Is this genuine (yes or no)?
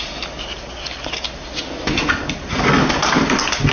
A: yes